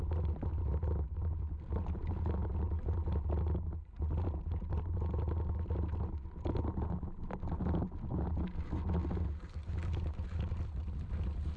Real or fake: real